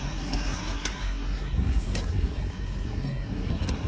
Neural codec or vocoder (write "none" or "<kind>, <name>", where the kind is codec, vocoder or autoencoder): codec, SNAC